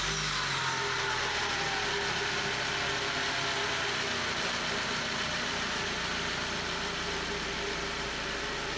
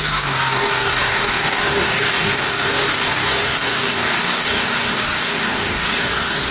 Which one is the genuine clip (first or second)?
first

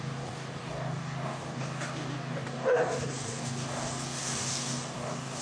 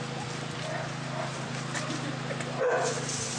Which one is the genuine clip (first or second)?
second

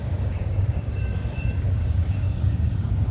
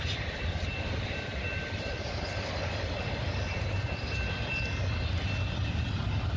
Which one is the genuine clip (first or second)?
second